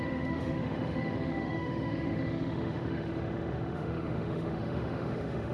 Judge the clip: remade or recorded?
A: remade